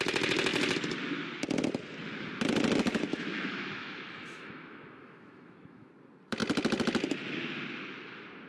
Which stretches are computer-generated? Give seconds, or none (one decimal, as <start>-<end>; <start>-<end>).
3.1-5.9